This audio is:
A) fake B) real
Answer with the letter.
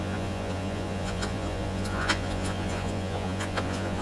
A